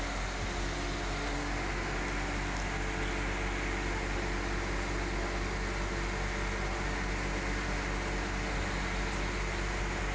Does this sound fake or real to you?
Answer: real